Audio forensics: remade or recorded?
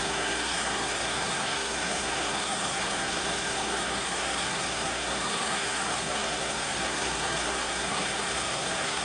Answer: remade